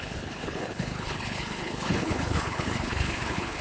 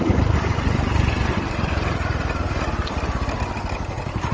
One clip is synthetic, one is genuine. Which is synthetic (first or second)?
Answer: first